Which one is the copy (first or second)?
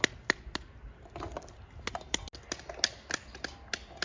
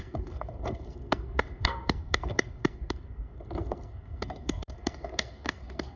second